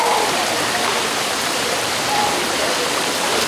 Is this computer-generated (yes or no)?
yes